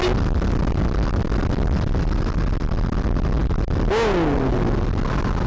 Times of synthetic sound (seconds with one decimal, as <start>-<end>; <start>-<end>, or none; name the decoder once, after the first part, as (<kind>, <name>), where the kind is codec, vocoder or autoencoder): none